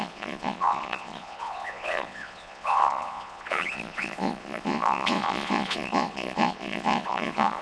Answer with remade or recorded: remade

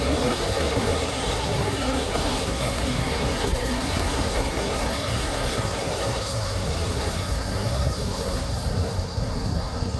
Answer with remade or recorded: remade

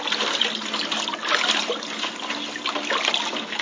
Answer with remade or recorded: recorded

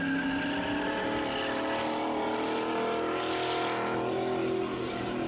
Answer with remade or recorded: recorded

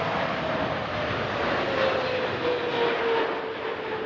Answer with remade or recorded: recorded